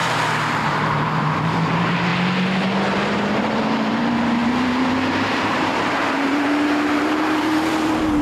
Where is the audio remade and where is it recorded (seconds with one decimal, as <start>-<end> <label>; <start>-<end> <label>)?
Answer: 0.0-2.1 remade; 2.1-3.1 recorded; 3.1-8.2 remade